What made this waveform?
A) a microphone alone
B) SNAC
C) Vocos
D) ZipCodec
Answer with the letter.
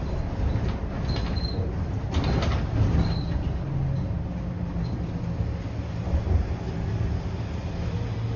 A